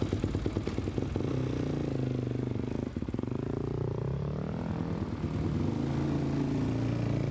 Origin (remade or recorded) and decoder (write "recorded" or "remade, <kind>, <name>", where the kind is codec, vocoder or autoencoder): recorded